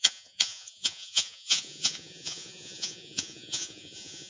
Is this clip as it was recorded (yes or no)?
no